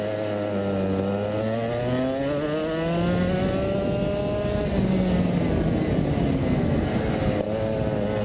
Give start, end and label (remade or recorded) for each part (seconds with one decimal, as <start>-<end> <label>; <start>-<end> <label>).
0.0-6.4 recorded; 6.4-7.1 remade; 7.1-8.2 recorded